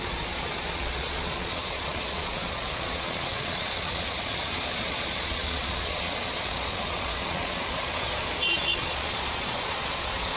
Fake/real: fake